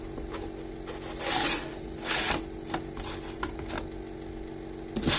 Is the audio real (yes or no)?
yes